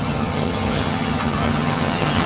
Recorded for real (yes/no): no